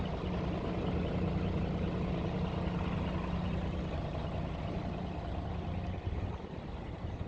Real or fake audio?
real